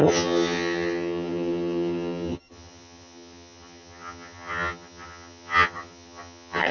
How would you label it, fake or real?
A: fake